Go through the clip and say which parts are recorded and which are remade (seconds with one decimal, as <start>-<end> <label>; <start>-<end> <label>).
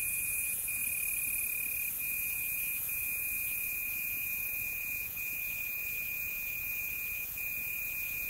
0.0-0.8 remade; 0.8-2.0 recorded; 2.0-8.3 remade